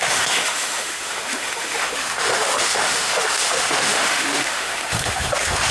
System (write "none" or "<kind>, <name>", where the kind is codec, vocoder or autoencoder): autoencoder, DAC-VAE